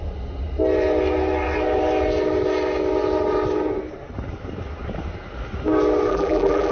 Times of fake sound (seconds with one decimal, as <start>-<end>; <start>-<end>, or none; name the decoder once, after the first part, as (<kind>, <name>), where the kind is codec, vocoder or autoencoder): 6.1-6.7 (vocoder, BigVGAN v2)